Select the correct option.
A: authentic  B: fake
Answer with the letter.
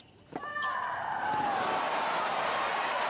A